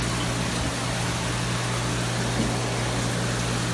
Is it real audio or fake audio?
real